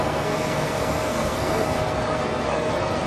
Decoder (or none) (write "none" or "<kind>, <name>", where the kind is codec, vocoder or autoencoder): codec, SNAC